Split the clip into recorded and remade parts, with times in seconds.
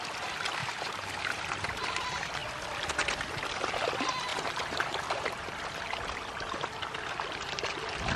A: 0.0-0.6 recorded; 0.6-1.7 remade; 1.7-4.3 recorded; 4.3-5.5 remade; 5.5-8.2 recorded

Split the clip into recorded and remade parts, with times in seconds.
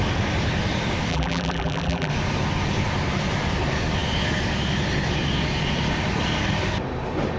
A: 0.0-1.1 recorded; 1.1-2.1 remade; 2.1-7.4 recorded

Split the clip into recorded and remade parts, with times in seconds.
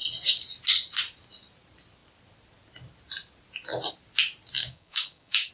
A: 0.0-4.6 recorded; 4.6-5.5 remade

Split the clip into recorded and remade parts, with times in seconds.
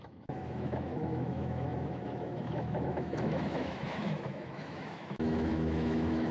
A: 0.0-6.3 remade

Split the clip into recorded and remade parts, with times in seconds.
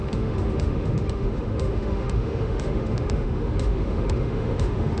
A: 0.0-5.0 remade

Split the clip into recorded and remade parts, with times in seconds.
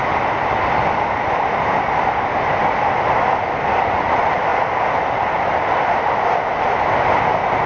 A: 0.0-7.7 recorded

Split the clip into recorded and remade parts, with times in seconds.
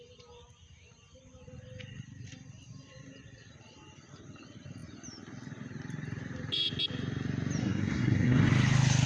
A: 0.0-7.6 recorded; 7.6-8.5 remade; 8.5-9.1 recorded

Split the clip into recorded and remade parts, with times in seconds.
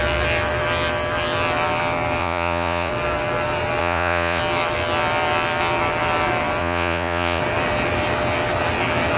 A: 0.0-2.2 recorded; 2.2-2.9 remade; 2.9-3.8 recorded; 3.8-4.4 remade; 4.4-6.6 recorded; 6.6-7.4 remade; 7.4-9.2 recorded